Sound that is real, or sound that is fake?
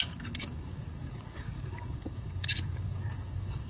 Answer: fake